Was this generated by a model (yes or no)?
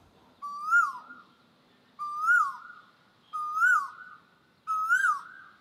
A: no